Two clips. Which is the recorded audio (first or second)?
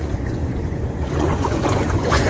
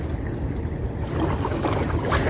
second